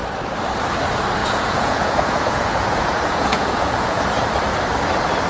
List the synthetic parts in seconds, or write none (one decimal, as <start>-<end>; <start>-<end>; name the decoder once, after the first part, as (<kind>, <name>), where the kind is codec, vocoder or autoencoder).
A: 1.2-4.0 (vocoder, Vocos)